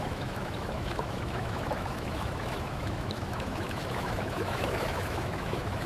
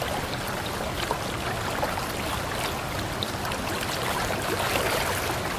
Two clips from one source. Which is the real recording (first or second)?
second